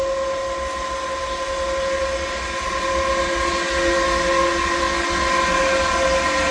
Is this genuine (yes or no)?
yes